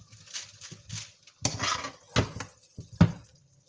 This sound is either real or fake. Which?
real